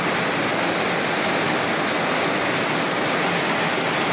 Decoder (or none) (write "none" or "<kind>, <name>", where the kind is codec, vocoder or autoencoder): none